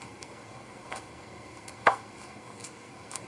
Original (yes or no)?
no